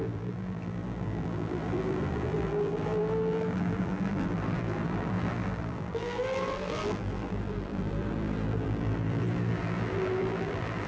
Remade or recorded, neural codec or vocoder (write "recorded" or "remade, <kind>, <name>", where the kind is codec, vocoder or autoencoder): remade, vocoder, BigVGAN v2